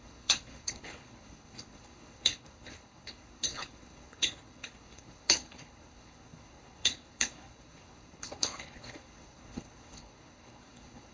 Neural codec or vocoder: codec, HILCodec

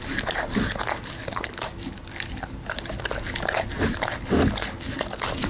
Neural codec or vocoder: none